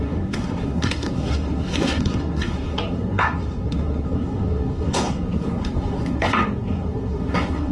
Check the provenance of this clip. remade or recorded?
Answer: remade